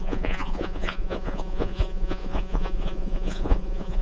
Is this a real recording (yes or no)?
no